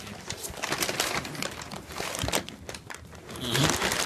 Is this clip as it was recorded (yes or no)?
yes